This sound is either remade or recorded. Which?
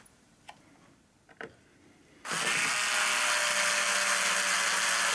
recorded